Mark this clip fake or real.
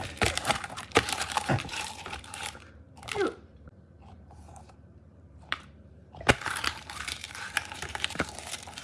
fake